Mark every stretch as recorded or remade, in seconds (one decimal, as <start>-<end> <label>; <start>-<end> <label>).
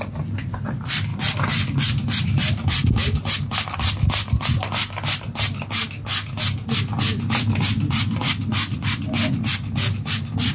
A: 0.0-1.1 recorded; 1.1-3.4 remade; 3.4-10.5 recorded